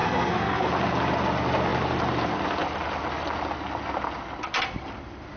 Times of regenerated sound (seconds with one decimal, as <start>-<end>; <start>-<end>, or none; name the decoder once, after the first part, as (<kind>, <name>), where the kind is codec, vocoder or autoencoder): 0.0-0.7 (codec, SNAC)